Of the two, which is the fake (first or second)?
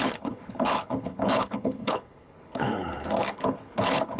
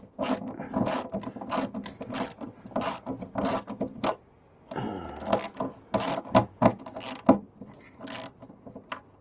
first